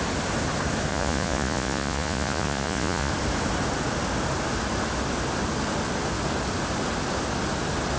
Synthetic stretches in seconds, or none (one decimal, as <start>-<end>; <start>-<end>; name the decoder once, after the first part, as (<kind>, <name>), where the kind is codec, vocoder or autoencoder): 0.9-3.1 (vocoder, Vocos)